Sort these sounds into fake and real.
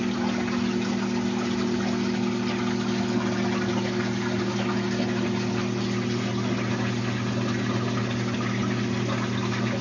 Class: real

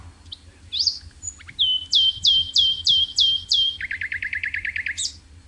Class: real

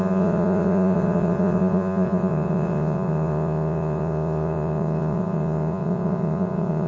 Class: fake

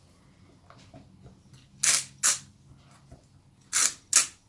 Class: real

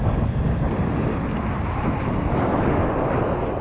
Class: real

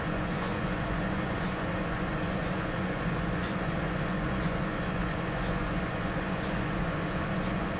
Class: fake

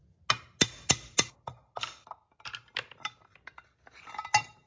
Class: real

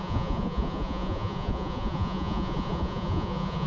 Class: fake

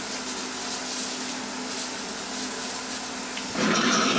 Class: real